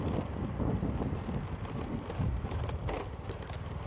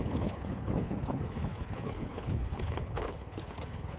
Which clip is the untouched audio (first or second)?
first